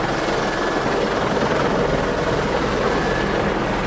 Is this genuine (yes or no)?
yes